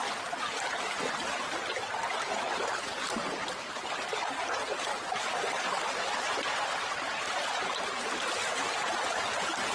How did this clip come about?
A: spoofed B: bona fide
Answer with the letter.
B